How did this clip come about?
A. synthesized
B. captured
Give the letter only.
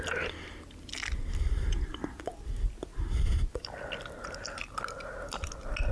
B